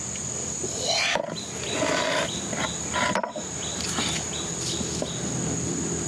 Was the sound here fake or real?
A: real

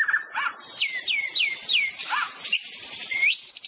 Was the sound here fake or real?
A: real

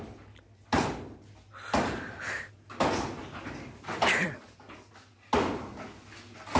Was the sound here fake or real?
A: real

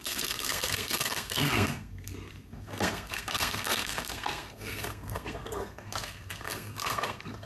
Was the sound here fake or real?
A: fake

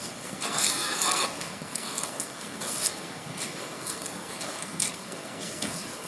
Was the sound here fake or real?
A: fake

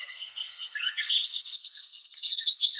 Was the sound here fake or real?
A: fake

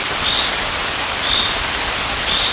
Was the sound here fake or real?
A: real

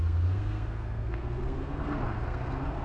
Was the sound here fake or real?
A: fake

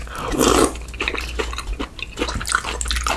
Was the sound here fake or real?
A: real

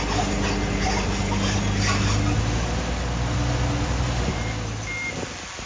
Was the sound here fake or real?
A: real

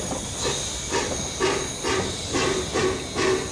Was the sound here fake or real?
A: real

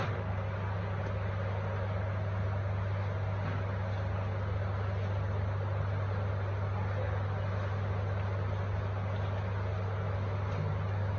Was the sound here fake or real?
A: real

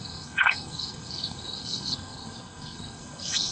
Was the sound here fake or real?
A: fake